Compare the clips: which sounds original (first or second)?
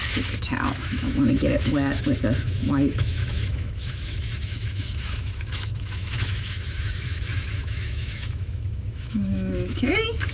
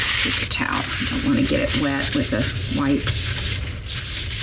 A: second